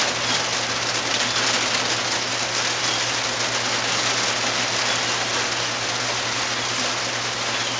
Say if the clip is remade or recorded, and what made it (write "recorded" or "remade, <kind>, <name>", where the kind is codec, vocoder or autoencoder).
recorded